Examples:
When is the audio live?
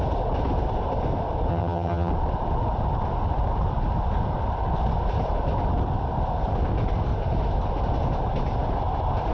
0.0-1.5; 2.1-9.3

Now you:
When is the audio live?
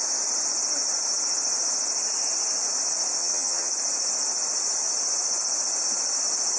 0.0-3.2; 3.7-6.6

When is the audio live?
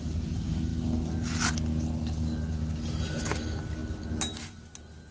0.0-5.1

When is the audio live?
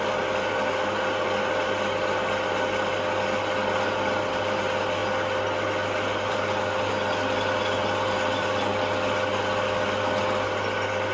0.0-11.1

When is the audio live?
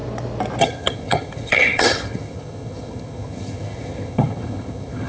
0.0-0.6